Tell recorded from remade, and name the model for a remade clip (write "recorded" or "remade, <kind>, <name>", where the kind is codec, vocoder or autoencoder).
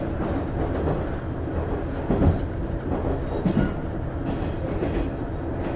recorded